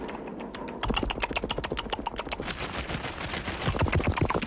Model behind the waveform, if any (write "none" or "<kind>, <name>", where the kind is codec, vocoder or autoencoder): none